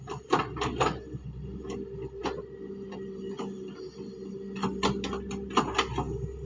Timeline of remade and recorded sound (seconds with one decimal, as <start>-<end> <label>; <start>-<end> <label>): 0.0-6.5 recorded